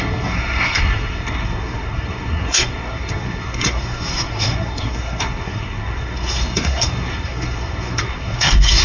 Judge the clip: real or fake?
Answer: fake